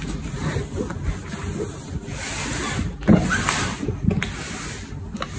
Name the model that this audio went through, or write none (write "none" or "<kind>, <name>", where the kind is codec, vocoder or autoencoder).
none